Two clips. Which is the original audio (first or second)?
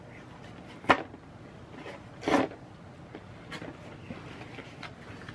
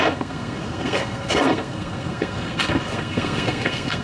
first